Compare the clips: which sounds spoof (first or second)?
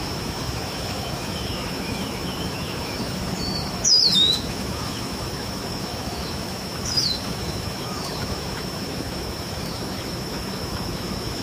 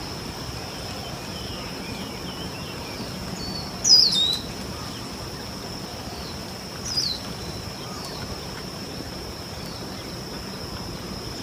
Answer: first